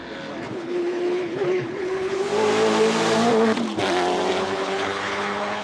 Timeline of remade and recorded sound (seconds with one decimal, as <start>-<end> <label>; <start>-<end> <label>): 0.0-0.5 recorded; 0.5-2.3 remade; 2.3-4.4 recorded; 4.4-5.6 remade